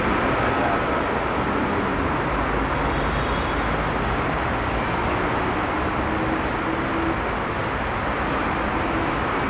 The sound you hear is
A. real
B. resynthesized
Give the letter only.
A